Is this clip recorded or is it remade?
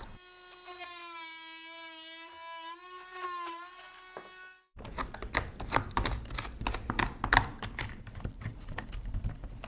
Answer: recorded